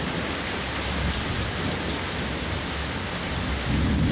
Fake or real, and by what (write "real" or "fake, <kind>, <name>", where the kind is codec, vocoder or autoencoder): real